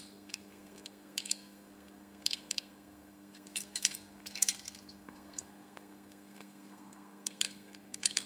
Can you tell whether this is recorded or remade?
remade